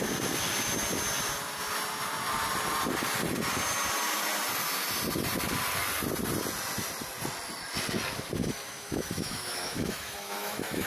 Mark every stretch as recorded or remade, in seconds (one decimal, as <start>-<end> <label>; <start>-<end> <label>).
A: 0.0-8.4 recorded; 8.4-10.9 remade